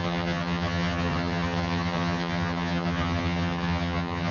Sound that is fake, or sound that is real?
fake